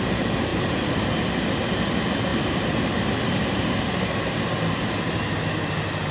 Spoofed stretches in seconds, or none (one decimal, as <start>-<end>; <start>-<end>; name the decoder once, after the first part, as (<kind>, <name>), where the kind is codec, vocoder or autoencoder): 0.5-1.0 (vocoder, BigVGAN v2); 2.3-5.3